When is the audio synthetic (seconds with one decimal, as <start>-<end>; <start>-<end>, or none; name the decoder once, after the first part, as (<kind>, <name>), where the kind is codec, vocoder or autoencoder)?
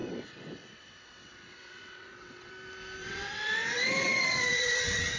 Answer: 0.0-2.5 (vocoder, WaveNeXt); 3.0-5.2